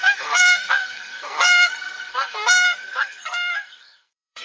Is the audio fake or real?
fake